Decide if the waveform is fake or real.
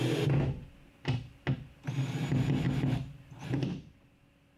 real